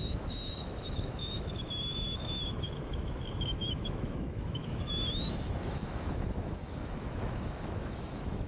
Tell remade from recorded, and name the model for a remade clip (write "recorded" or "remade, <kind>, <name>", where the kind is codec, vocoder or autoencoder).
remade, autoencoder, DAC-VAE